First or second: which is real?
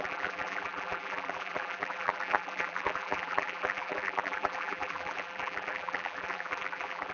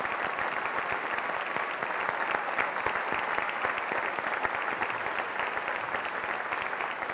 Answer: second